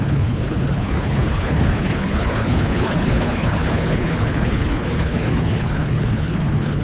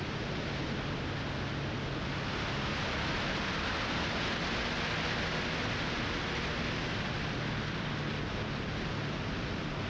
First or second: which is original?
second